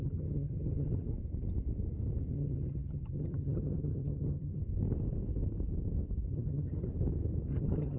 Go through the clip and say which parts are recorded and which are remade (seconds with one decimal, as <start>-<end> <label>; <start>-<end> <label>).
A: 0.0-1.1 remade; 1.1-2.3 recorded; 2.3-4.6 remade; 4.6-6.3 recorded; 6.3-6.9 remade; 6.9-7.5 recorded; 7.5-8.0 remade